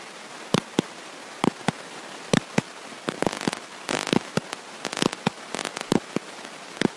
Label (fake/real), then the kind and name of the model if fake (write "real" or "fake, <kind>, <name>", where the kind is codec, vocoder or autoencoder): real